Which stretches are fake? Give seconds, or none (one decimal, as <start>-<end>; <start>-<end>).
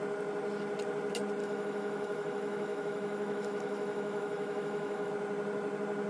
1.4-5.1